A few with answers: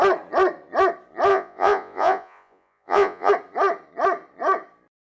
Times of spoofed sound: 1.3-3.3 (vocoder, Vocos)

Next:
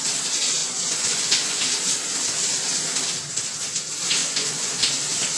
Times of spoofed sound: 0.6-1.6 (vocoder, Vocos); 4.2-4.7

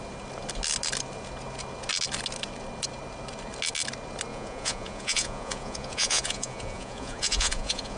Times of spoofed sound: 4.3-8.0 (vocoder, Vocos)